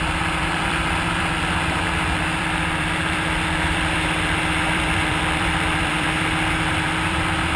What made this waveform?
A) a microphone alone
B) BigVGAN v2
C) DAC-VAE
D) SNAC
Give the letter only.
B